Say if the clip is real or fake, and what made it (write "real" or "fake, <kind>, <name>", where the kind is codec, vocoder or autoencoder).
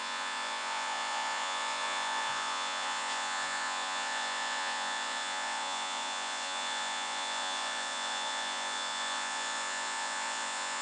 fake, vocoder, Vocos